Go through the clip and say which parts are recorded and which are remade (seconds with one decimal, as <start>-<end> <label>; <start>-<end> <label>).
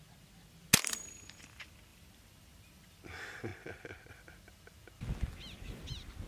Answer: 0.0-1.9 recorded; 1.9-3.0 remade; 3.0-6.3 recorded